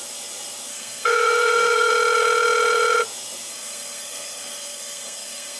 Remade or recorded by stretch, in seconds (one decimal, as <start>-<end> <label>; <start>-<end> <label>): 0.0-0.7 recorded; 0.7-1.9 remade; 1.9-3.5 recorded; 3.5-5.6 remade